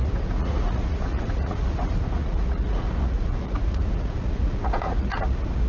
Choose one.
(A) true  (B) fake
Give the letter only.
B